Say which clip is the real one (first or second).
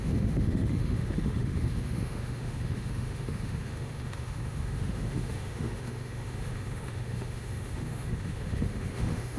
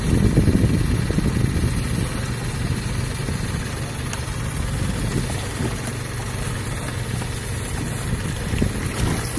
second